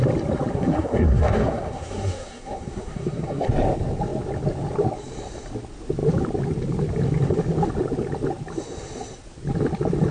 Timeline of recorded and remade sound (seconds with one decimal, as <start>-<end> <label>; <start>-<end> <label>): 0.0-0.5 recorded; 0.5-3.5 remade; 3.5-10.1 recorded